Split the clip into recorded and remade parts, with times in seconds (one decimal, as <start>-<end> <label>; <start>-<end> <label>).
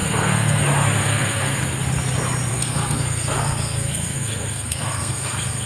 0.0-0.6 remade; 0.6-1.0 recorded; 1.0-1.6 remade; 1.6-2.5 recorded; 2.5-5.7 remade